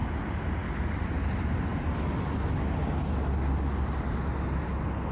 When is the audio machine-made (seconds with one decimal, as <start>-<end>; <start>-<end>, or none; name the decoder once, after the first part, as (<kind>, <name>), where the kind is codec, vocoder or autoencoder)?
none